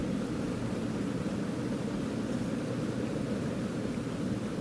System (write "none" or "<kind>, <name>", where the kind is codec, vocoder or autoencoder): none